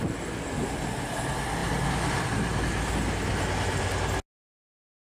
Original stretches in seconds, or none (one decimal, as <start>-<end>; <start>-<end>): 0.0-5.1

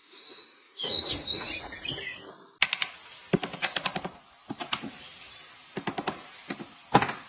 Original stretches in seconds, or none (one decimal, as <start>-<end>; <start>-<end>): 1.5-7.3

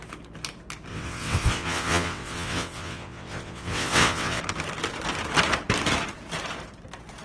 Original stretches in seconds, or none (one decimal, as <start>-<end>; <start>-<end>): 0.0-0.9; 4.4-7.2

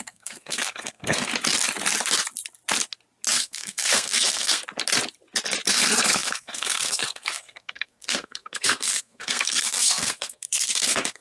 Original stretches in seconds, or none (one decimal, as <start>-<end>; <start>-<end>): 1.3-3.3; 4.6-5.7

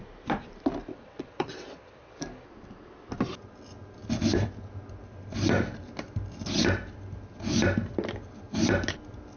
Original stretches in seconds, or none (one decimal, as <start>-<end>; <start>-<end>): 0.0-0.9; 2.1-9.4

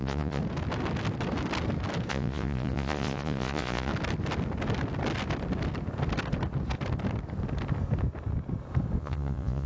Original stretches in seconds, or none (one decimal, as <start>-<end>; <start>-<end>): 0.4-2.1; 3.9-9.0

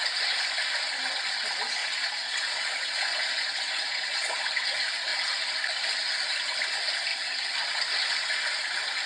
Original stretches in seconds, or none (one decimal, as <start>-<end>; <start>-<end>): 0.0-1.8; 4.4-9.1